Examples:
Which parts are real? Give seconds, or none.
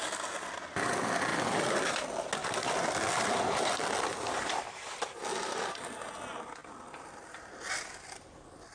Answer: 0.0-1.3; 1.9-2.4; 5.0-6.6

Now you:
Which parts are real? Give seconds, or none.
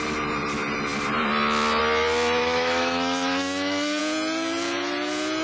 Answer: 0.0-2.4; 4.0-5.4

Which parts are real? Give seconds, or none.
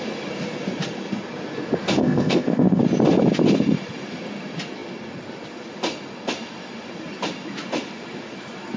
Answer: 0.0-2.0; 2.8-8.8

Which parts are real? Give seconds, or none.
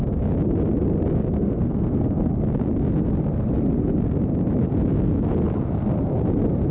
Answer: 0.0-1.3; 2.3-6.7